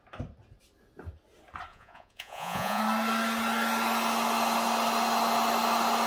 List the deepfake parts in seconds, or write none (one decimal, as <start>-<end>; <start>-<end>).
1.7-2.8